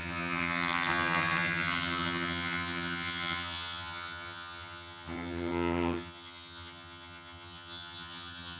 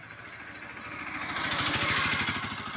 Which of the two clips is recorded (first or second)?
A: second